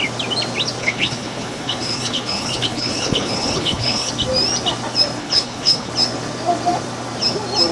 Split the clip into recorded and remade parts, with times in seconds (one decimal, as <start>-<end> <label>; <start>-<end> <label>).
0.0-0.8 recorded; 0.8-4.1 remade; 4.1-5.2 recorded; 5.2-5.9 remade; 5.9-7.7 recorded